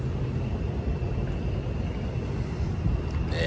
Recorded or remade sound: recorded